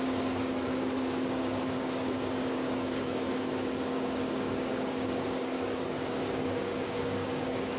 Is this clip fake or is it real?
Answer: fake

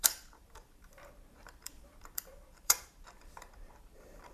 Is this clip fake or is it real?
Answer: fake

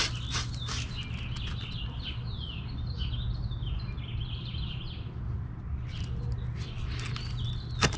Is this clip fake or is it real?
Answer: real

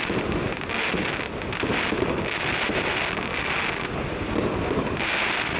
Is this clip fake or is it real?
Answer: real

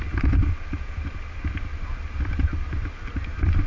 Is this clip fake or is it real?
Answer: real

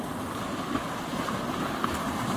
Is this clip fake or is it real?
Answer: real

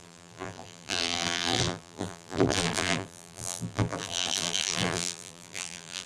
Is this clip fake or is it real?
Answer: fake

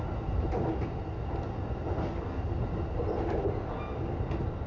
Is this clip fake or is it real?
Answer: real